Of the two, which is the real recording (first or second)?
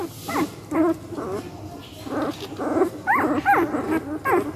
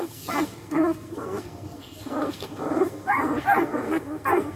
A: first